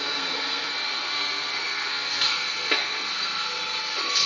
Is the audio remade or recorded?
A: remade